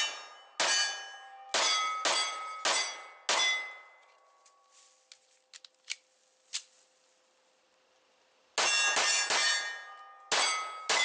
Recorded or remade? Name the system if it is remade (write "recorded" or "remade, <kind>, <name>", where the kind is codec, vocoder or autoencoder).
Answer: recorded